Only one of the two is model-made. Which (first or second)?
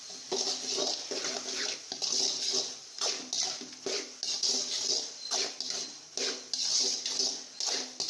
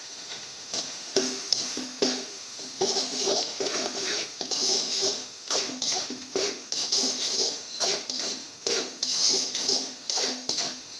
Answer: second